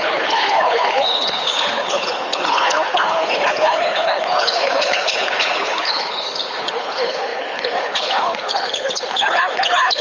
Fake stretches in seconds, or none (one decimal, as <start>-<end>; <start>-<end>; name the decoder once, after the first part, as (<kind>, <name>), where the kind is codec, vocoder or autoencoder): 0.0-10.0 (codec, HILCodec)